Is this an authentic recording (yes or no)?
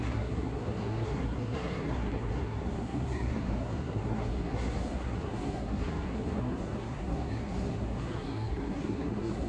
no